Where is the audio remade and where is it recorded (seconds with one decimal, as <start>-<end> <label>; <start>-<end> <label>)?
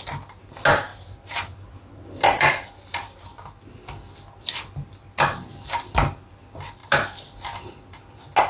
0.0-8.5 recorded